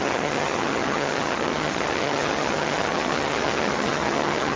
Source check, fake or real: fake